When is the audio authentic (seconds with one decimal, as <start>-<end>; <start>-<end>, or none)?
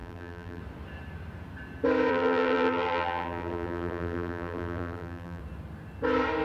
0.6-2.1; 5.4-6.4